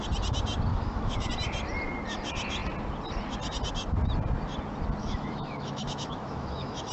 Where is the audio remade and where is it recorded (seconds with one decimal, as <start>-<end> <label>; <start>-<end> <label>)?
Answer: 0.0-0.7 recorded; 0.7-1.3 remade; 1.3-5.0 recorded; 5.0-6.9 remade